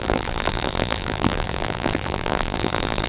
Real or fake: fake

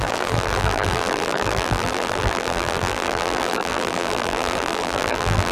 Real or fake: fake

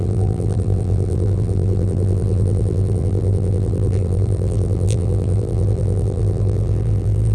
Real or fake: fake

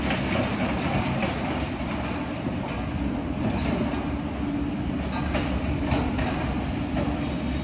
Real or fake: real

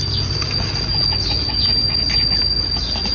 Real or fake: real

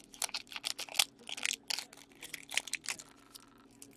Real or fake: real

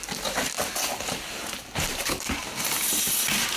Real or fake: real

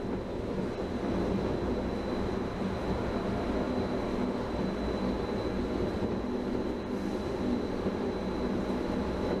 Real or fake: real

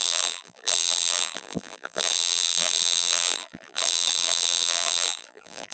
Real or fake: fake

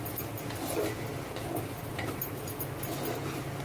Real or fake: real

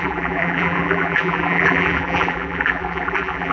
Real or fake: fake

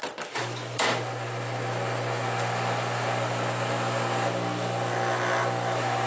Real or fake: real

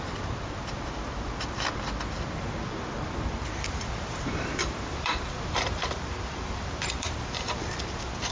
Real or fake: fake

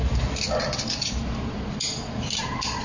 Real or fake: fake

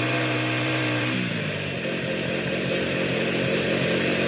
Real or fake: fake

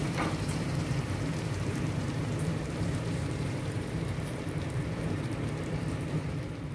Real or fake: fake